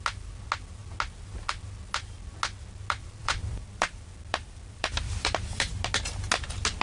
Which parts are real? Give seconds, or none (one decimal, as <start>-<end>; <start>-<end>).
0.0-3.2; 5.7-6.8